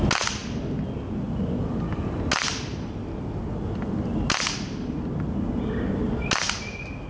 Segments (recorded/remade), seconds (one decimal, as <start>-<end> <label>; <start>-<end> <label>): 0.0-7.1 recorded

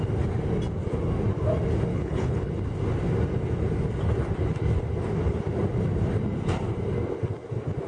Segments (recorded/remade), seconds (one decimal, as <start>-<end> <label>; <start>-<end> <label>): 0.0-1.9 recorded; 1.9-2.5 remade; 2.5-7.9 recorded

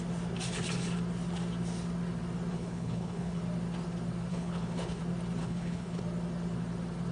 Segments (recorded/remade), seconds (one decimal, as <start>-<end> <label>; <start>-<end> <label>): 0.0-2.5 recorded; 2.5-3.4 remade; 3.4-4.3 recorded; 4.3-5.0 remade; 5.0-5.4 recorded; 5.4-6.0 remade; 6.0-7.1 recorded